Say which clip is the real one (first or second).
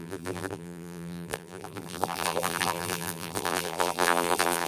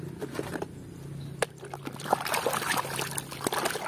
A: second